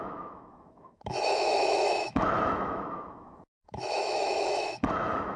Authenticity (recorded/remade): remade